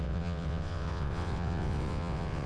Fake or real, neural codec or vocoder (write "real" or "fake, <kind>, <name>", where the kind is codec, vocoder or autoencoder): fake, vocoder, WaveNeXt